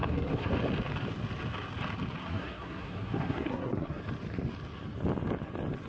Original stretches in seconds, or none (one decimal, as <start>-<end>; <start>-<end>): 0.5-2.2; 4.0-5.9